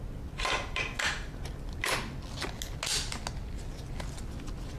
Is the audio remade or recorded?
recorded